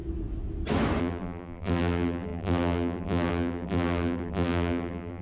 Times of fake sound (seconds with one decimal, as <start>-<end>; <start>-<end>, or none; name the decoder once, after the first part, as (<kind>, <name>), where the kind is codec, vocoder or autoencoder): 1.0-5.2 (vocoder, BigVGAN v2)